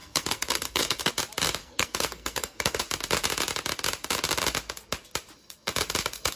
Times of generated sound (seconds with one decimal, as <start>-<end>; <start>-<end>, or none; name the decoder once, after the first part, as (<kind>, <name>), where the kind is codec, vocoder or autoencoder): 0.0-1.1 (codec, SNAC); 1.6-2.8